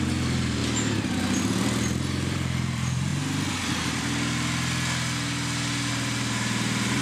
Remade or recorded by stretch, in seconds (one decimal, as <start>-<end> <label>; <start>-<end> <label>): 0.0-0.6 remade; 0.6-1.4 recorded; 1.4-3.1 remade; 3.1-5.9 recorded; 5.9-7.0 remade